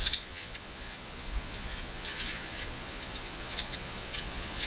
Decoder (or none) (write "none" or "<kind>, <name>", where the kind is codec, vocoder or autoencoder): vocoder, Vocos